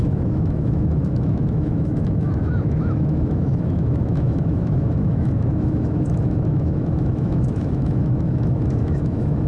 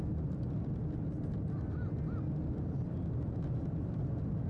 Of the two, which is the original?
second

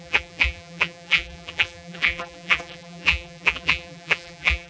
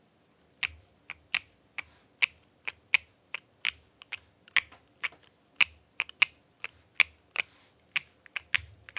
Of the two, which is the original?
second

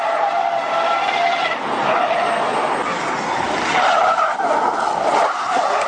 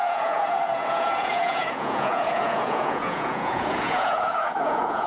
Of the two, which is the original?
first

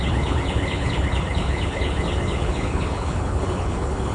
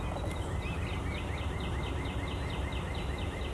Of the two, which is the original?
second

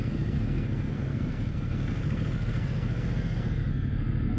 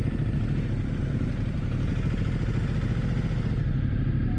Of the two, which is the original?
second